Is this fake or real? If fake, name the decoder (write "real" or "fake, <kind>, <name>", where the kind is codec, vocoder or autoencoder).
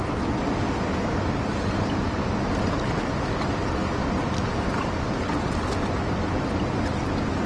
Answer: real